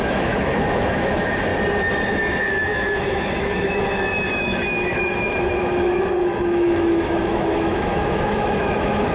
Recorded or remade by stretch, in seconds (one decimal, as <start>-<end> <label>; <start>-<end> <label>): 0.0-1.5 remade; 1.5-2.4 recorded; 2.4-9.1 remade